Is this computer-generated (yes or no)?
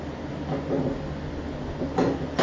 no